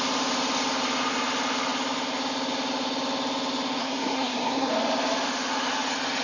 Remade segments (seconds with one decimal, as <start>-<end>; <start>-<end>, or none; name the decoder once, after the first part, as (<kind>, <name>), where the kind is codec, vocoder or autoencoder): 3.8-4.7 (codec, SNAC)